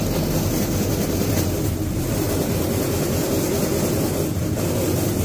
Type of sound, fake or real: real